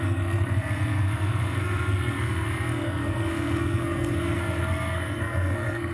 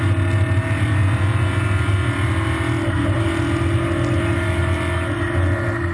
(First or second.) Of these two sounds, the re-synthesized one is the first